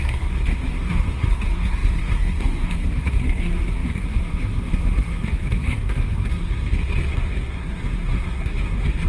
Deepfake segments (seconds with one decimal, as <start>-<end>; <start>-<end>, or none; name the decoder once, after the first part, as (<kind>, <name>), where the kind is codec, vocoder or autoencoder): 0.0-9.1 (codec, SNAC)